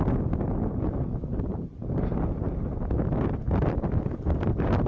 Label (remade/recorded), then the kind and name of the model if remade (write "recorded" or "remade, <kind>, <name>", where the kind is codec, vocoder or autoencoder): recorded